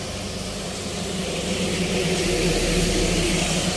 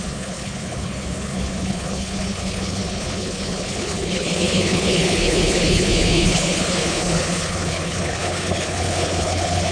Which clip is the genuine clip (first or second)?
first